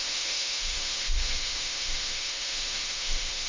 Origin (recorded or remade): remade